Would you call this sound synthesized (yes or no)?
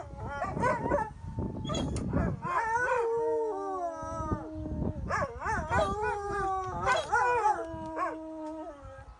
no